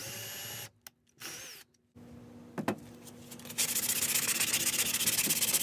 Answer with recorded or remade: recorded